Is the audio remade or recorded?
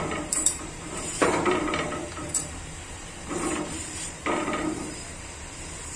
remade